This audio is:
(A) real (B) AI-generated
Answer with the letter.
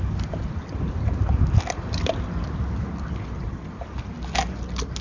A